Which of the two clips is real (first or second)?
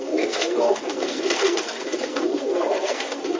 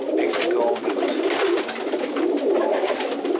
second